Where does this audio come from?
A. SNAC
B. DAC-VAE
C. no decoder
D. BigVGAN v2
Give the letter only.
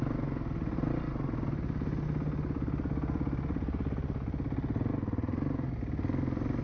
C